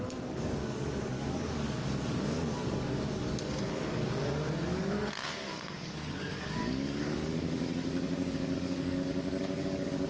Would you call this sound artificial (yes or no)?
yes